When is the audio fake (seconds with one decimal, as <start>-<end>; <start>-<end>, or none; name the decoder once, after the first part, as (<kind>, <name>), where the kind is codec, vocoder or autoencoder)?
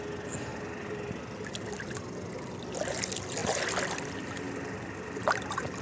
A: none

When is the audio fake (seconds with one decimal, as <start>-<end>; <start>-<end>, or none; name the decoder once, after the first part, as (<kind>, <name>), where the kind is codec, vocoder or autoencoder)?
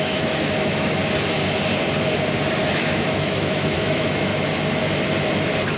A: 0.0-1.0 (autoencoder, DAC-VAE); 2.6-4.3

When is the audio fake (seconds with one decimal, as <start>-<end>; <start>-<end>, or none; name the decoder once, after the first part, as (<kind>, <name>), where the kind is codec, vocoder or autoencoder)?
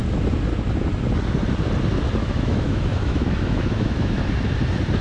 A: 2.2-4.2 (autoencoder, DAC-VAE)